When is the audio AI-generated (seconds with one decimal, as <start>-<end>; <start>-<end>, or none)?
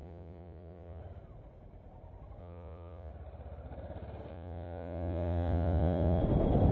0.0-1.0; 2.4-3.1; 4.3-6.2